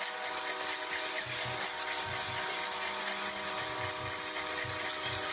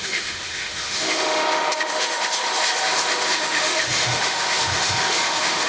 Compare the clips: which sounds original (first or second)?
first